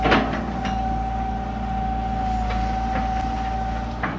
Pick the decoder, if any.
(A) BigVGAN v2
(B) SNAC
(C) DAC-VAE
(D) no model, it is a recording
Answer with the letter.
D